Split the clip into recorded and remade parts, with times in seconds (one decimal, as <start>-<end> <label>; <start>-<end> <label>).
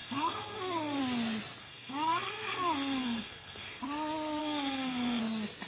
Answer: 0.0-1.0 remade; 1.0-1.6 recorded; 1.6-3.8 remade; 3.8-4.4 recorded; 4.4-5.2 remade; 5.2-5.7 recorded